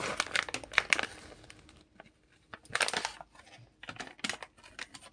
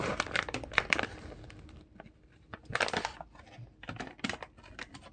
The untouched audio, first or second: first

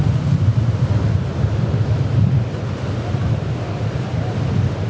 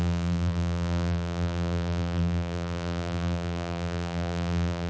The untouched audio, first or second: first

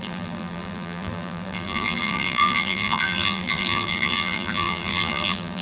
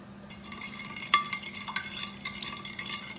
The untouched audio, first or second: second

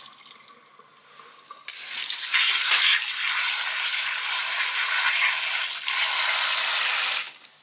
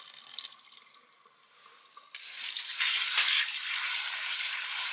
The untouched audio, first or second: first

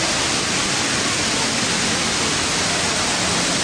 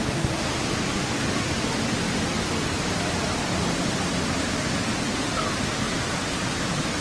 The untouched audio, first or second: first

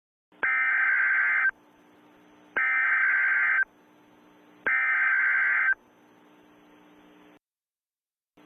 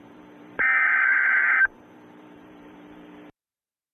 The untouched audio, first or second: first